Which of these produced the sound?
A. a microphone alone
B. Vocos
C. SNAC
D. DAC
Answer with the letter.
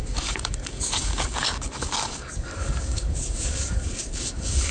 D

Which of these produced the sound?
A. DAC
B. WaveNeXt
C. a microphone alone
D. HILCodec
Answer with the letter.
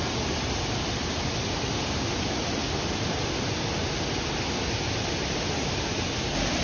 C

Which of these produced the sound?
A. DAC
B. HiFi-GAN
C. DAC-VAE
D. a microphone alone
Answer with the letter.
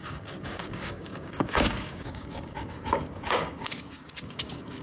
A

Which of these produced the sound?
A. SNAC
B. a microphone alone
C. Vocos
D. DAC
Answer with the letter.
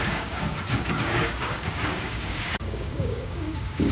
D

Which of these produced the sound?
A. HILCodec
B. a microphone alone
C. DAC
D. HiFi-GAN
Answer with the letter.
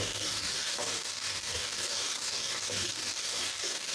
C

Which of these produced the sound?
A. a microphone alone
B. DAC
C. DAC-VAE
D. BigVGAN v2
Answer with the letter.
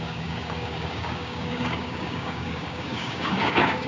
B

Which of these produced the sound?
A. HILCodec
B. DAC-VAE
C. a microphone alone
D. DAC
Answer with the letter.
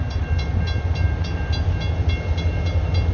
C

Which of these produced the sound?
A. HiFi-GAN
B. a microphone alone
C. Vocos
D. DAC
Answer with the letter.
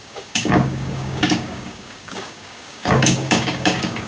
D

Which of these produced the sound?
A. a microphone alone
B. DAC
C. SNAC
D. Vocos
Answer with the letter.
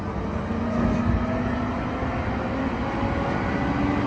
A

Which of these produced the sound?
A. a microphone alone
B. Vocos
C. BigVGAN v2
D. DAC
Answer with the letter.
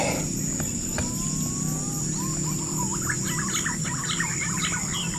A